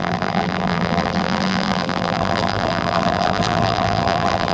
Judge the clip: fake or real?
fake